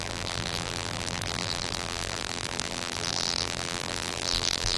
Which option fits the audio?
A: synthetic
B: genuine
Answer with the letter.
A